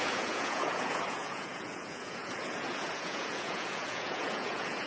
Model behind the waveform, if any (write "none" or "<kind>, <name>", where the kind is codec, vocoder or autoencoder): vocoder, Vocos